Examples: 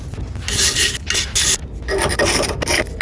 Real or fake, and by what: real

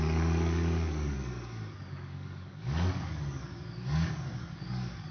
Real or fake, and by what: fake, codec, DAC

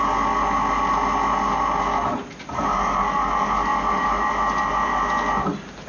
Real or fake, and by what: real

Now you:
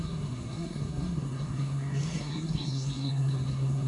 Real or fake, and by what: fake, codec, SNAC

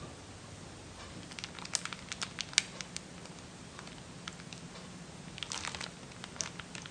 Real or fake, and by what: real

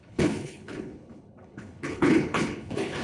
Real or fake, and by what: fake, codec, HILCodec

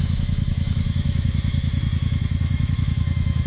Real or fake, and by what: fake, autoencoder, DAC-VAE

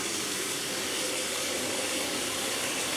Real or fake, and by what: fake, codec, DAC